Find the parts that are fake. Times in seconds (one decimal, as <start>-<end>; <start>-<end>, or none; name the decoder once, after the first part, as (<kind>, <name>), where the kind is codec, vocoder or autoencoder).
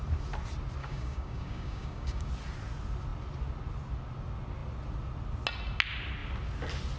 0.8-2.3 (codec, DAC)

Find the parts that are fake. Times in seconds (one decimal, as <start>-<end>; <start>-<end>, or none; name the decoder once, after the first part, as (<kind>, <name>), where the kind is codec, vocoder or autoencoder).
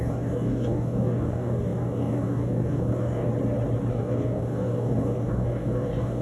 0.0-3.3 (codec, DAC); 3.9-6.2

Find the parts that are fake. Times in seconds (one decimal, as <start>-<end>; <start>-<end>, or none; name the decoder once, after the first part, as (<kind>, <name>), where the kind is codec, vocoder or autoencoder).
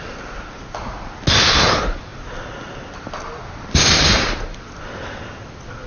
none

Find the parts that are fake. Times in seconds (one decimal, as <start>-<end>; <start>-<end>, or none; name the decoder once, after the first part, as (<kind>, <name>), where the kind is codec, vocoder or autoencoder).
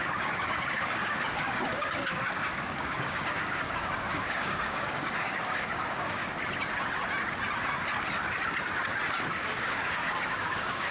0.0-6.2 (codec, DAC); 9.3-10.9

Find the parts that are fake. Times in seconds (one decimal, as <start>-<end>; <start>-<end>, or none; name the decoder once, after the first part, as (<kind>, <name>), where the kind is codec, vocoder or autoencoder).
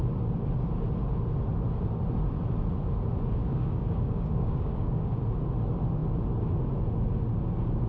3.4-5.1 (codec, DAC)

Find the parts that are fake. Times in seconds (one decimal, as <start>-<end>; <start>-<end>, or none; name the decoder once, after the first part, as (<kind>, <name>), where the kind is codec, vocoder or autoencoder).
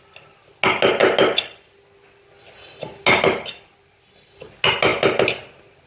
none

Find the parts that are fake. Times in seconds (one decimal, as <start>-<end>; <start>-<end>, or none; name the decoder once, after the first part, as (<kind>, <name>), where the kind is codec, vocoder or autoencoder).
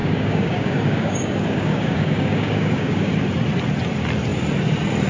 0.0-3.1 (codec, DAC)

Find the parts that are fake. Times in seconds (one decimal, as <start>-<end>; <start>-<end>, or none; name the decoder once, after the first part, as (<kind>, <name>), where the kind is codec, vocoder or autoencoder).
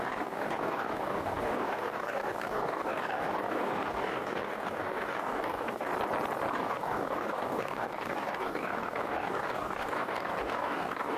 0.0-5.9 (codec, DAC); 6.5-11.2